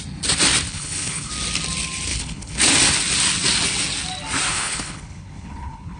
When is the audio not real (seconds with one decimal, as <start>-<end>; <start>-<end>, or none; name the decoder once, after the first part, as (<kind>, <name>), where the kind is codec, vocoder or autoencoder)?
0.7-1.3 (codec, HILCodec); 2.1-2.6; 4.5-6.0